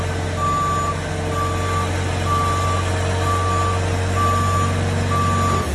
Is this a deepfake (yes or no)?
no